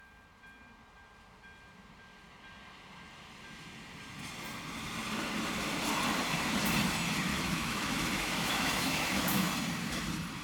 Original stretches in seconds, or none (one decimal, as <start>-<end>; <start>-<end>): 0.0-7.3; 9.5-10.4